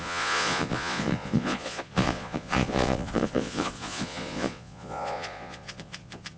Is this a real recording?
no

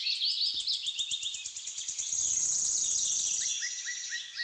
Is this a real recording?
yes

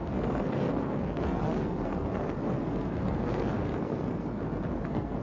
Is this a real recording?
no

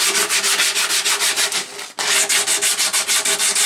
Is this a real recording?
yes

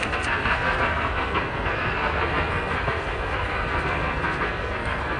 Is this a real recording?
no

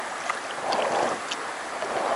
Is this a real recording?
yes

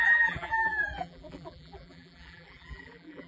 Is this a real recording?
no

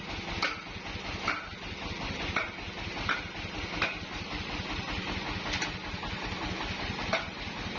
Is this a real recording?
yes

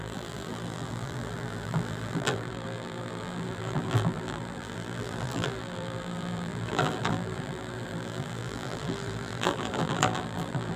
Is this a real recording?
no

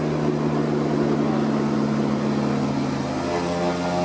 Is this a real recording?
yes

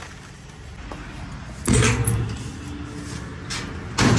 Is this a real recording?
yes